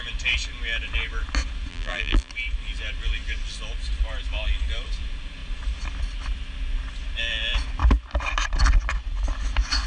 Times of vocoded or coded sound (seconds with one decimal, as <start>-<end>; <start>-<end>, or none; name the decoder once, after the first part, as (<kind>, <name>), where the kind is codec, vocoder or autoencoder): 1.7-2.3 (vocoder, BigVGAN v2)